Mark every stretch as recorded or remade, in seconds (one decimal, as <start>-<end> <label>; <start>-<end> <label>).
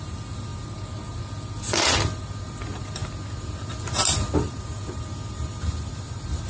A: 0.0-6.5 recorded